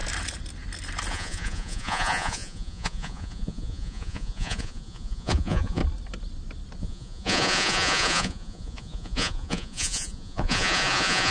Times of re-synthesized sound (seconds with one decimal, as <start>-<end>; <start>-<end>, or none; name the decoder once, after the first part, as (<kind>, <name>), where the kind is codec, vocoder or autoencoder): 1.1-5.8 (vocoder, Vocos); 6.8-11.3